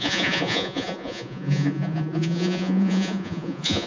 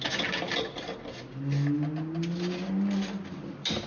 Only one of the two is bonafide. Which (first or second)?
second